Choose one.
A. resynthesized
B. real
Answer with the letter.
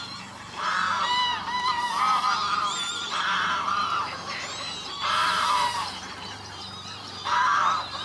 A